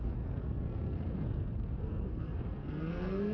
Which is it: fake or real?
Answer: fake